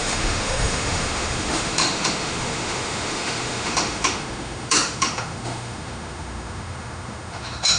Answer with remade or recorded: remade